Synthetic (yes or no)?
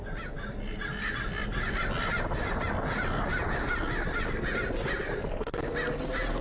no